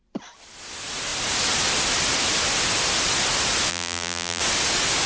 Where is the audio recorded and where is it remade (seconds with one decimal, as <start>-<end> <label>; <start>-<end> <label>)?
0.0-3.7 recorded; 3.7-4.4 remade; 4.4-5.1 recorded